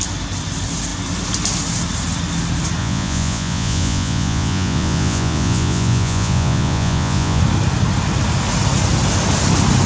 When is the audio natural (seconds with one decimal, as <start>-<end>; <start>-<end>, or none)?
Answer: 0.0-2.8; 7.4-9.9